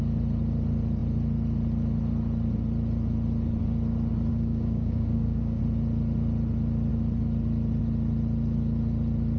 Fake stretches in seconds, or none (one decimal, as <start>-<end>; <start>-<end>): 4.3-5.6